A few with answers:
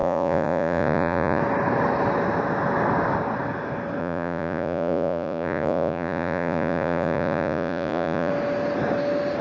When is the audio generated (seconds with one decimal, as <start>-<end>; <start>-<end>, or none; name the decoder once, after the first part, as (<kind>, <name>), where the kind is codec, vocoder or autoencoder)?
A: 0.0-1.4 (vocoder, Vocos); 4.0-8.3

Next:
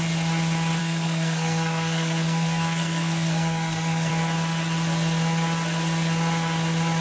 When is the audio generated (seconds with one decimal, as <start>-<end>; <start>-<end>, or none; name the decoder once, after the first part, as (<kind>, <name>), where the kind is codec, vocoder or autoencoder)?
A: 0.8-4.1 (codec, SNAC)

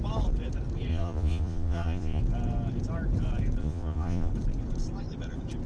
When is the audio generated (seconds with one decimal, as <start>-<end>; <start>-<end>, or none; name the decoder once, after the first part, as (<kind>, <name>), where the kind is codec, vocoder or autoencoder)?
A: 0.9-2.2 (vocoder, Vocos); 3.6-4.3

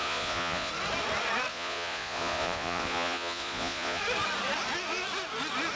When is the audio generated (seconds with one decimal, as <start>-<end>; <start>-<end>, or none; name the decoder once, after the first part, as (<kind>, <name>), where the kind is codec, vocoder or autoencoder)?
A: 0.0-0.7 (vocoder, Vocos); 1.5-4.0

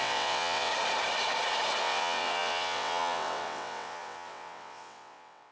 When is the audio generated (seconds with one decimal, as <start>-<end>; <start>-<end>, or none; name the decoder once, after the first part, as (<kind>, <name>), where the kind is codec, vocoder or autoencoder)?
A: 0.0-0.7 (vocoder, WaveNeXt); 1.8-5.5

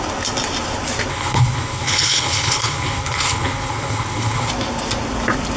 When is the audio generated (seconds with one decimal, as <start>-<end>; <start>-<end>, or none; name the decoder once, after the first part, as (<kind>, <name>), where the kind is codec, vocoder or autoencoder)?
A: 1.1-4.5 (codec, HILCodec)

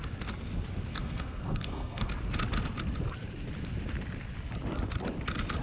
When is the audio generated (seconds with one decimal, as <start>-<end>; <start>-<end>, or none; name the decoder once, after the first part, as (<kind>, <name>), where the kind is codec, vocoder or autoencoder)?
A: 0.9-2.1 (codec, SNAC)

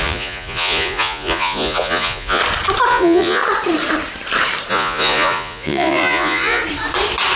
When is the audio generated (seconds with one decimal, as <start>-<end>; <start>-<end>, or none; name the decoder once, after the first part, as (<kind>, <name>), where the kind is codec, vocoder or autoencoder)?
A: 0.0-2.4 (vocoder, Vocos); 2.9-3.4; 4.7-6.6